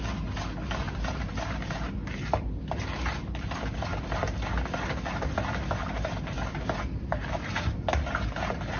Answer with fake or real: real